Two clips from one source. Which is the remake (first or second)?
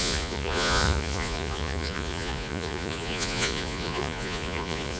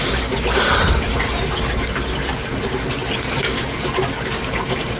first